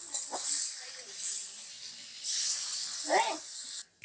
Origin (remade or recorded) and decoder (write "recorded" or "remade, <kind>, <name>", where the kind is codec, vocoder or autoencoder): recorded